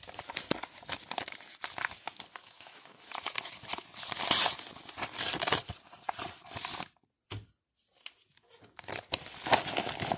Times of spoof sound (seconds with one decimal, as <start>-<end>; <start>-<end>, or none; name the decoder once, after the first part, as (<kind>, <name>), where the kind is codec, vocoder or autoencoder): 2.4-3.1 (autoencoder, DAC-VAE)